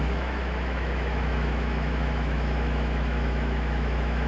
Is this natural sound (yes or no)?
no